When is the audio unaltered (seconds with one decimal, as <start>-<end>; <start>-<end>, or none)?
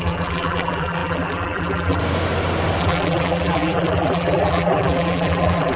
2.0-2.8